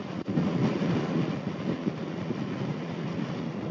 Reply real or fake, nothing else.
fake